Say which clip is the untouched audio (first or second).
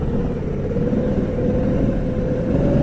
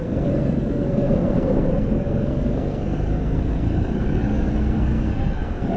first